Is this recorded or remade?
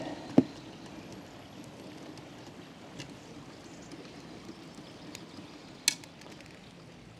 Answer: recorded